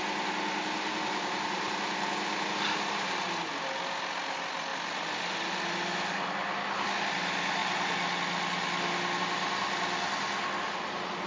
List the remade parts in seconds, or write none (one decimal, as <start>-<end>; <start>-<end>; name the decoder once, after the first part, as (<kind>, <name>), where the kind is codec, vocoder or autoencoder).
none